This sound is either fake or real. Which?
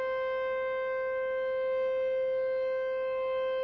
real